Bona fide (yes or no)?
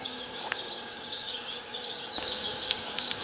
no